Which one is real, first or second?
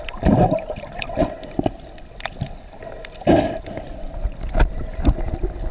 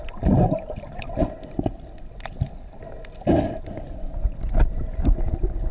second